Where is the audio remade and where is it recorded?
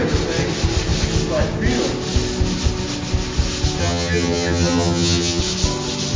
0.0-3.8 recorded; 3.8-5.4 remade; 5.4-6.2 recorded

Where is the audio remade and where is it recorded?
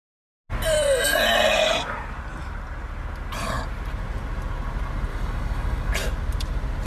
0.0-5.1 recorded; 5.1-5.9 remade; 5.9-6.9 recorded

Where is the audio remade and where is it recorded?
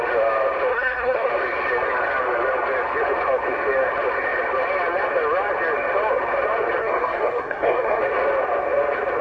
0.0-0.7 recorded; 0.7-1.3 remade; 1.3-6.8 recorded; 6.8-8.0 remade; 8.0-9.2 recorded